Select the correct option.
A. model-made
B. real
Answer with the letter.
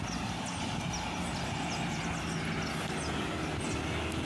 B